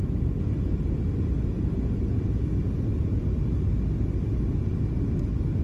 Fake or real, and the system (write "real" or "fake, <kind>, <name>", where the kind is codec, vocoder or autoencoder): real